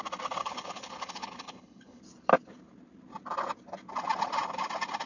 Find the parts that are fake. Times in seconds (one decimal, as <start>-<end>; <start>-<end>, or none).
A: 0.4-2.0